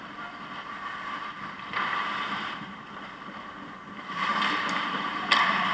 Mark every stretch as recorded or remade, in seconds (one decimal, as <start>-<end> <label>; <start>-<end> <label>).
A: 0.0-4.3 remade; 4.3-4.8 recorded; 4.8-5.7 remade